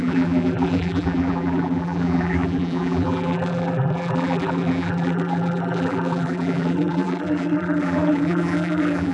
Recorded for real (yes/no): no